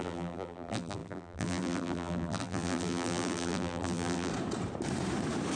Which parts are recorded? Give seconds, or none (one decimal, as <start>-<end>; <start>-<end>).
4.3-5.6